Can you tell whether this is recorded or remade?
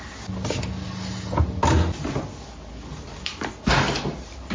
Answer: recorded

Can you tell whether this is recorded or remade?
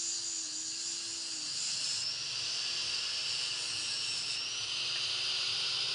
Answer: recorded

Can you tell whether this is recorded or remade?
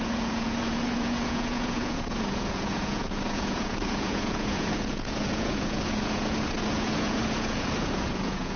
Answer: remade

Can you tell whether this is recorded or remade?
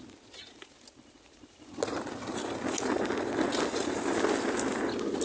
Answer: recorded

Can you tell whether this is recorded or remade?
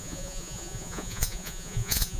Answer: remade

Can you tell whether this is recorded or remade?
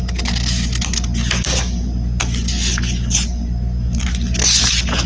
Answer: recorded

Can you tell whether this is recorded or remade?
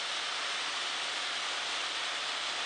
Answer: recorded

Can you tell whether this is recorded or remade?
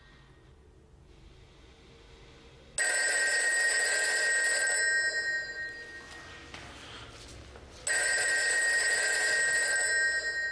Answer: recorded